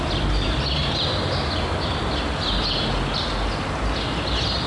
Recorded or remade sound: recorded